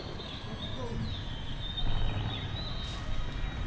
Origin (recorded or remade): recorded